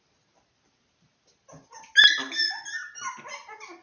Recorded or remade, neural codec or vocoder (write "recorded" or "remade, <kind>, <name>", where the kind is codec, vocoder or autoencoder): recorded